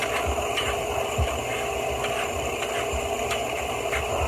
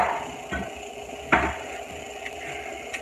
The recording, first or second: second